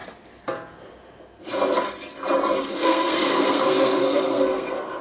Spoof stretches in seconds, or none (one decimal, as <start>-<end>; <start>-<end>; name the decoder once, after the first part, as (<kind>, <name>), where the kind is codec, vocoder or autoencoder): 2.6-5.0 (codec, SNAC)